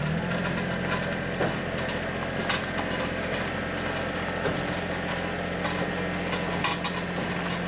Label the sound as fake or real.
real